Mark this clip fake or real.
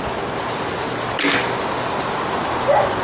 real